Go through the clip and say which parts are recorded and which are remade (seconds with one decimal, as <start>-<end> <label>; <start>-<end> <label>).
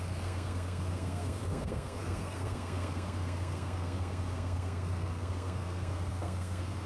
0.0-6.9 remade